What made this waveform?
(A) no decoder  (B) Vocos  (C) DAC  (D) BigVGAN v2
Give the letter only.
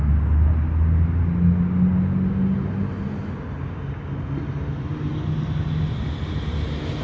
A